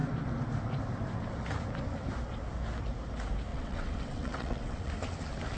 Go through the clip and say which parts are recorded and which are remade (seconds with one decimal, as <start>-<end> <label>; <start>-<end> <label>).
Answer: 0.0-3.5 recorded; 3.5-4.9 remade; 4.9-5.6 recorded